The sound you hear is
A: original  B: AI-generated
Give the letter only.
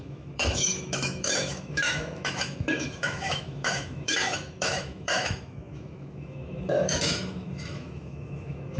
B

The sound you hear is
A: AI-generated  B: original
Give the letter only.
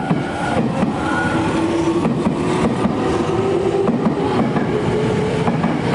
B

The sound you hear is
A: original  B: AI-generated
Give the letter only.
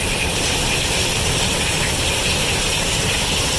B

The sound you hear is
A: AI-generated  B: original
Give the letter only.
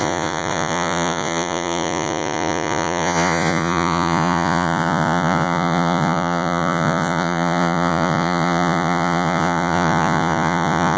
A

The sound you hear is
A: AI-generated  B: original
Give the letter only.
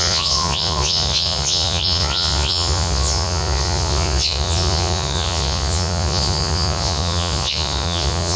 A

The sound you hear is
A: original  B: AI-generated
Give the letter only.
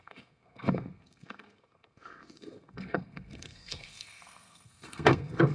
B